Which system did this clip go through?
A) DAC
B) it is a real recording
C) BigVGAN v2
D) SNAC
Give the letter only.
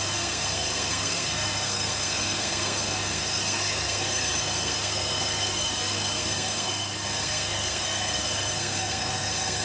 D